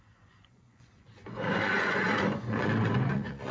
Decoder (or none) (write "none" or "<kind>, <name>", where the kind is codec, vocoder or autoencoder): vocoder, Vocos